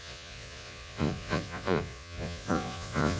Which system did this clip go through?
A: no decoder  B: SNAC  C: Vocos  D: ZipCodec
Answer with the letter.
C